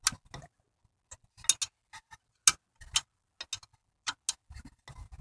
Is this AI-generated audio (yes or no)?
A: no